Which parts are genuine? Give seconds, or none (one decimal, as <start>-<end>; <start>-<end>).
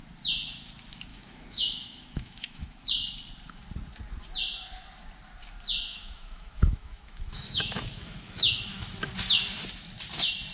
0.0-1.1; 2.8-5.9; 9.1-10.5